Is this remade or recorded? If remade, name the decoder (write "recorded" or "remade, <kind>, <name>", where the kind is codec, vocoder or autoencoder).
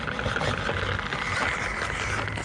recorded